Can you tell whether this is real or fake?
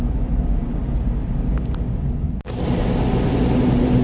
real